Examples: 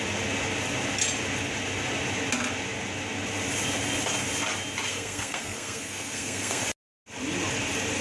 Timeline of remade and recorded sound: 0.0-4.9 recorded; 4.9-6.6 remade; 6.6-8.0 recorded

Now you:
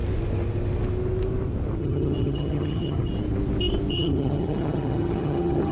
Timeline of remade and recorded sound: 0.0-1.8 recorded; 1.8-3.1 remade; 3.1-3.9 recorded; 3.9-5.7 remade

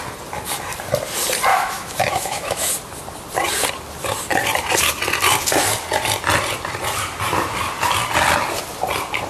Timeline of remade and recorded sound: 0.0-1.5 recorded; 1.5-2.7 remade; 2.7-9.3 recorded